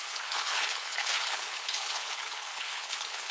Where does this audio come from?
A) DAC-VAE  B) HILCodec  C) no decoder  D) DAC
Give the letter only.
B